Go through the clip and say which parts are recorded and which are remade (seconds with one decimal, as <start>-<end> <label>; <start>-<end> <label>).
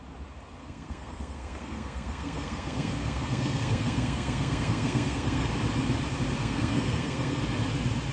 0.0-0.6 recorded; 0.6-5.5 remade; 5.5-6.4 recorded; 6.4-7.4 remade; 7.4-8.1 recorded